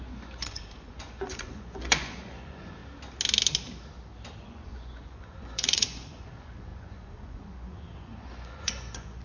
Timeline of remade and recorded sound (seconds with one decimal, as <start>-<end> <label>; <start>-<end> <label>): 0.0-2.8 remade; 2.8-4.4 recorded; 4.4-9.2 remade